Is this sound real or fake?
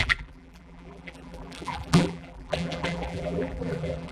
fake